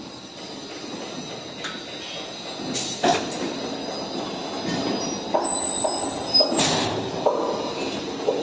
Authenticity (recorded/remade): recorded